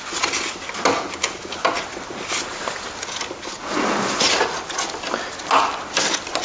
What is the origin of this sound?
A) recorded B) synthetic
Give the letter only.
A